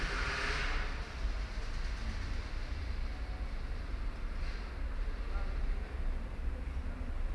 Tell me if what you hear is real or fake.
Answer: real